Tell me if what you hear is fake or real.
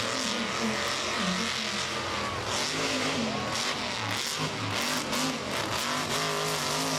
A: real